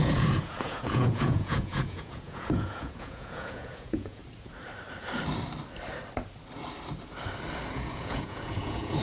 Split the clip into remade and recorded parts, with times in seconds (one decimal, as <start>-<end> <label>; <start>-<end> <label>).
0.0-4.2 remade; 4.2-7.7 recorded; 7.7-9.0 remade